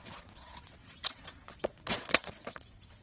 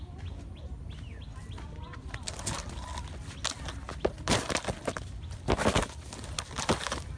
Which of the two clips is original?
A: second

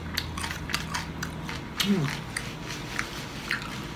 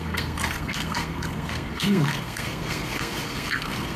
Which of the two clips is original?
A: first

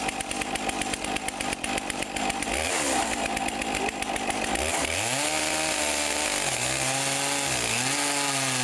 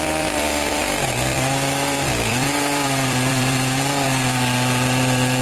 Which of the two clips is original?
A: first